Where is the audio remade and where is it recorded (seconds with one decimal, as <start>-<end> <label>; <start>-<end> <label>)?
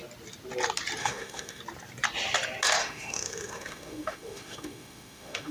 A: 0.0-1.0 recorded; 1.0-1.6 remade; 1.6-2.8 recorded; 2.8-5.5 remade